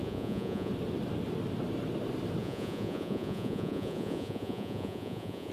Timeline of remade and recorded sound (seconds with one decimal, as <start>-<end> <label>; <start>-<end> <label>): 0.0-0.7 remade; 0.7-2.4 recorded; 2.4-5.5 remade